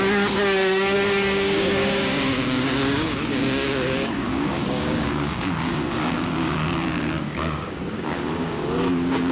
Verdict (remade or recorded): remade